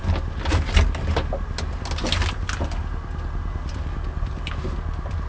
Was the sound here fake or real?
real